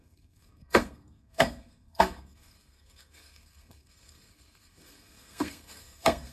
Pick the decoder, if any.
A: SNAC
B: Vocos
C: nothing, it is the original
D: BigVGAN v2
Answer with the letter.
A